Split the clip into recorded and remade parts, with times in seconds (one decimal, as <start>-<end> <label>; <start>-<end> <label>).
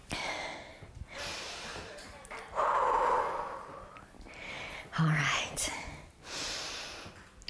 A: 0.0-4.9 recorded; 4.9-5.8 remade; 5.8-7.5 recorded